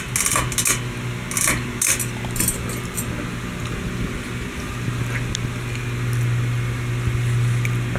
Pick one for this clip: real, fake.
real